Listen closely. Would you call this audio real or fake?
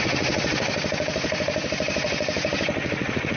fake